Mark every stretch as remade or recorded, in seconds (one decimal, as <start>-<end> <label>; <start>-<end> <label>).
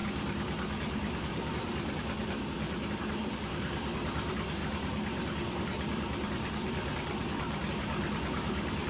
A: 0.0-8.9 recorded